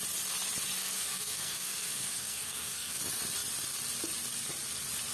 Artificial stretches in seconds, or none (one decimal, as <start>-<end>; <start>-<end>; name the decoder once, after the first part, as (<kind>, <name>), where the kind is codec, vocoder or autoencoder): 0.8-3.0 (codec, SNAC)